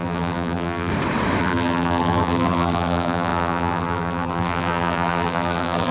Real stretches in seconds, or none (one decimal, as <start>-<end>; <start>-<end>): 0.9-1.4